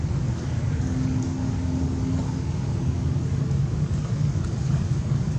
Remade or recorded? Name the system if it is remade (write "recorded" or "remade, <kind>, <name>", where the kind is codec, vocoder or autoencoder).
remade, codec, DAC